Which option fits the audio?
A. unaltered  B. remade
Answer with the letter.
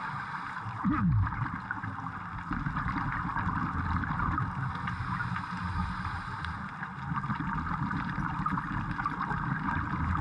A